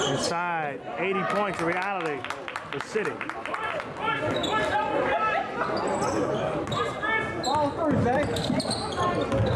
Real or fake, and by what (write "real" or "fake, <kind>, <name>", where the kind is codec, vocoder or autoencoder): real